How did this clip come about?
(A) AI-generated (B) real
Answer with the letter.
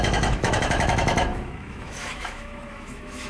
A